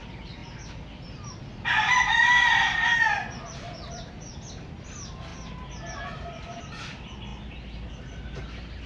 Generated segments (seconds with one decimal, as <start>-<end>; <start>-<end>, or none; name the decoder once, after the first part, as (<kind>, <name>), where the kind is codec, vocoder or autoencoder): none